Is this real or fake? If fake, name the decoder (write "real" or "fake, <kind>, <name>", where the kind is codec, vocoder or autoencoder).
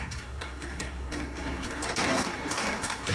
fake, codec, SNAC